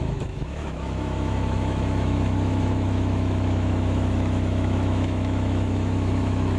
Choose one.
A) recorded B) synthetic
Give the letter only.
B